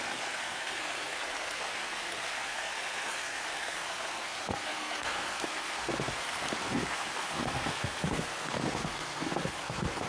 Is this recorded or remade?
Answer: remade